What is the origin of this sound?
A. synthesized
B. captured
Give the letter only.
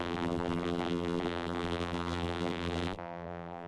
A